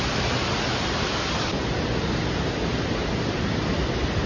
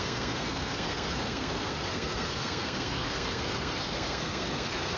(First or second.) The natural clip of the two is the first